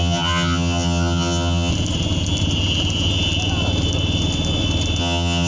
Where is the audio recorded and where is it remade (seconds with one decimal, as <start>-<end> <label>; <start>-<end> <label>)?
0.0-1.7 remade; 1.7-5.0 recorded; 5.0-5.5 remade